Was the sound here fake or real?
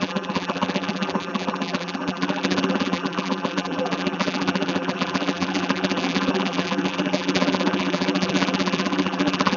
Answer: fake